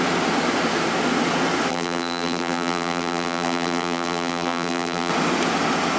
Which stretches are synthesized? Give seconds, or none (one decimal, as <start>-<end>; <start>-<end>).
1.7-5.1

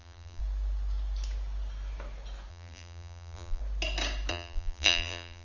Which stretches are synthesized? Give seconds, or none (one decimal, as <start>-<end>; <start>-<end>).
0.0-0.4; 2.5-3.6; 4.3-5.4

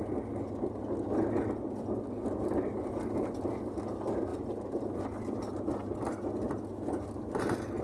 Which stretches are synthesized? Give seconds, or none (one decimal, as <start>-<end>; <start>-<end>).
none

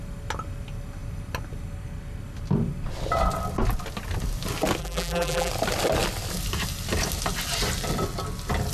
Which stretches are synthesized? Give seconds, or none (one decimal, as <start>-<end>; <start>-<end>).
4.8-5.5